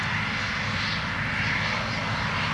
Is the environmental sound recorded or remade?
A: recorded